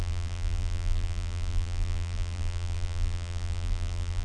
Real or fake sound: fake